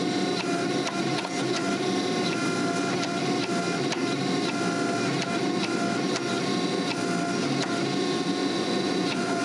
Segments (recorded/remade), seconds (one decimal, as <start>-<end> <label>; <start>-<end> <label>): 0.0-1.1 recorded; 1.1-1.7 remade; 1.7-8.4 recorded; 8.4-9.4 remade